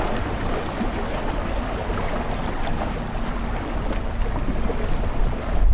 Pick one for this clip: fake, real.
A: real